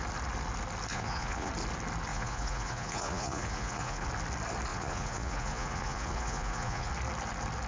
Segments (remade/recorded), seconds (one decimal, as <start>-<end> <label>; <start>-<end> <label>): 0.0-0.9 recorded; 0.9-1.5 remade; 1.5-2.1 recorded; 2.1-4.1 remade; 4.1-4.7 recorded; 4.7-6.9 remade; 6.9-7.7 recorded